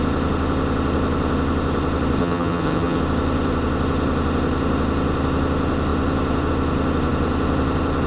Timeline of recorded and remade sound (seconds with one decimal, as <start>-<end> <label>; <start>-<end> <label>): 0.0-2.2 recorded; 2.2-3.0 remade; 3.0-8.1 recorded